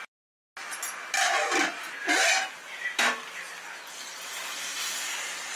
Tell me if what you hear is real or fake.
real